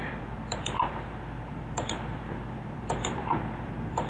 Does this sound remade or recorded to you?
remade